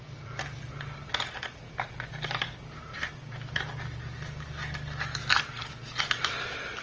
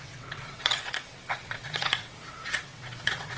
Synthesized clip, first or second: second